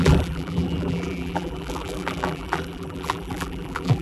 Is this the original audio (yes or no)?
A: no